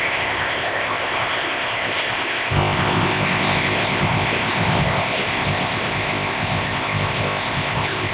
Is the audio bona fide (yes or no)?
no